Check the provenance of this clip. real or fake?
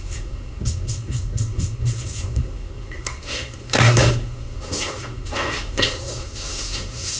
fake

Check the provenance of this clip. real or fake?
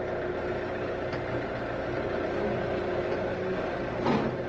real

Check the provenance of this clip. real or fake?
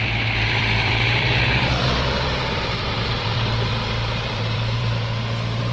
fake